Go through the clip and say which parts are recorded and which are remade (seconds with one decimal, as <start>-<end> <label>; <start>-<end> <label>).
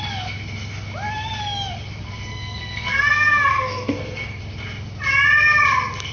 0.0-2.3 recorded; 2.3-4.4 remade; 4.4-6.1 recorded